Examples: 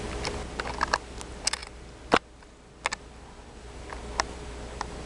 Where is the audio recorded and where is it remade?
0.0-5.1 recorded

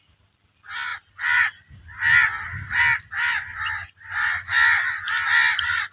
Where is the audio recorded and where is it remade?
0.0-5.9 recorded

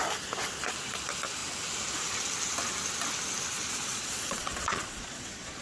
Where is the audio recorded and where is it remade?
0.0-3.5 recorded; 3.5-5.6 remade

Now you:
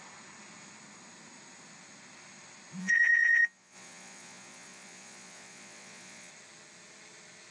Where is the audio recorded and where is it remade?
0.0-2.8 recorded; 2.8-6.3 remade; 6.3-7.5 recorded

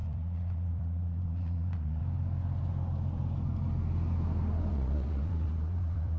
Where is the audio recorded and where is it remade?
0.0-2.0 remade; 2.0-4.7 recorded; 4.7-6.2 remade